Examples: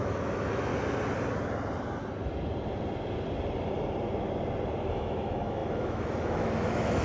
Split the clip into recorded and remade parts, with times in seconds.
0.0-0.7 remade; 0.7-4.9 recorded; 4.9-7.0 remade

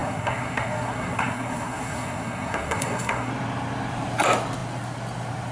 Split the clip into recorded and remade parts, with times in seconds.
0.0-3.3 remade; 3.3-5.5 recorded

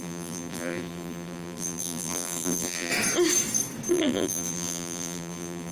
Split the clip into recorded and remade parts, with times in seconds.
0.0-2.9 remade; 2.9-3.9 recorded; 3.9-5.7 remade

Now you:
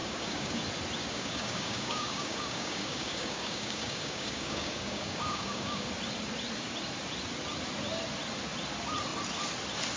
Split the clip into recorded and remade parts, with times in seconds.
0.0-0.6 remade; 0.6-1.0 recorded; 1.0-5.9 remade; 5.9-10.0 recorded

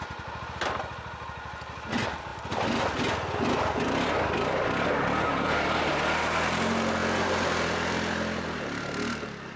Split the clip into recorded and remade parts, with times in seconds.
0.0-9.6 recorded